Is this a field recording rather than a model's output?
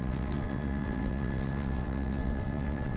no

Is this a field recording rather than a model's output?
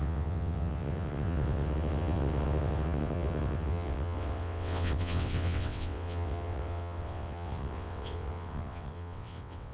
no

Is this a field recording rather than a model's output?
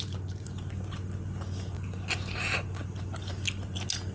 yes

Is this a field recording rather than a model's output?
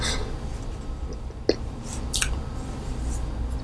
yes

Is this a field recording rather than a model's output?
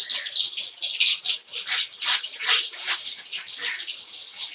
yes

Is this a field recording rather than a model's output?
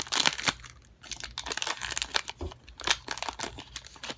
yes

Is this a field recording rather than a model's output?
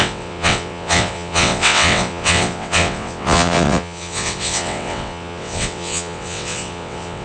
no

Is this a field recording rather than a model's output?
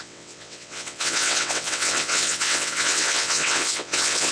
no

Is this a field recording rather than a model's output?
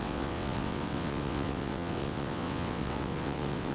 no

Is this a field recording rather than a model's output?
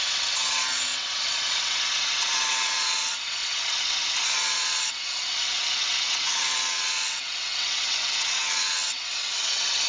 no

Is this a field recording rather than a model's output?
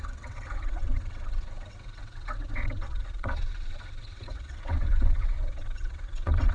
no